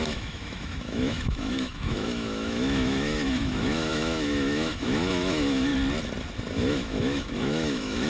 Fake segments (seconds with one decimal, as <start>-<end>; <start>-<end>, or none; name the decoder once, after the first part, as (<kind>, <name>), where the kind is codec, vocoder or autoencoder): 0.0-5.7 (autoencoder, DAC-VAE); 6.5-8.1

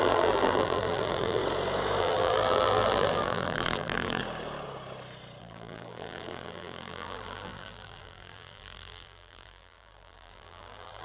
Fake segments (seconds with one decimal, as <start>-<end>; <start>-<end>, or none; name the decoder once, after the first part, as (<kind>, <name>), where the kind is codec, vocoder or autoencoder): 0.0-1.4 (vocoder, BigVGAN v2); 2.0-4.2; 5.4-11.0